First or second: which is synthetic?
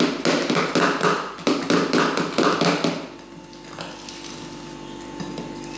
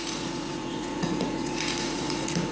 second